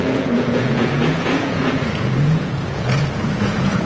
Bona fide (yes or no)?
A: no